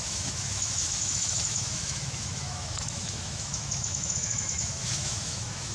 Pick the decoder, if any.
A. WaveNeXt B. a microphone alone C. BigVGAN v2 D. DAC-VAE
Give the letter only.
D